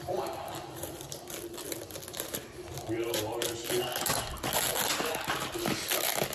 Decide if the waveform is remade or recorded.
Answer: recorded